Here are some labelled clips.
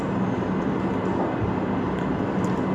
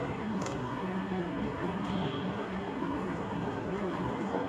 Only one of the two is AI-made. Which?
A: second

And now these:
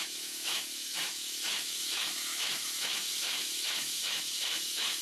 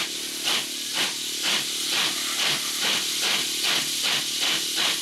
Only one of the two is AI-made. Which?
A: first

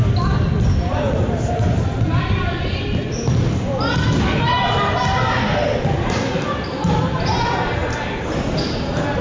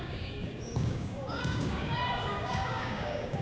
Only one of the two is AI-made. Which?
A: second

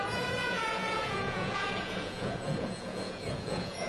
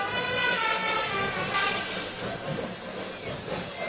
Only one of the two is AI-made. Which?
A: first